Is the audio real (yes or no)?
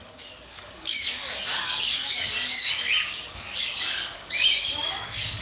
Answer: no